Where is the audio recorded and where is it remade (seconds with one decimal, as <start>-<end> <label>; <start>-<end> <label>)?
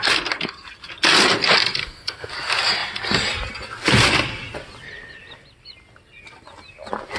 0.0-1.8 recorded; 1.8-2.3 remade; 2.3-7.2 recorded